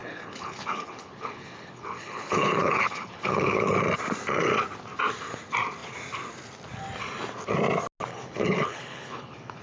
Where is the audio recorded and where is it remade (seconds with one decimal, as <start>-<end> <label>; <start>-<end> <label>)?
0.0-3.8 remade; 3.8-8.1 recorded; 8.1-9.6 remade